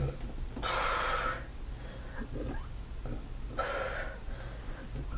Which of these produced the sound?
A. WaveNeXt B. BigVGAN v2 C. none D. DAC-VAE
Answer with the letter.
C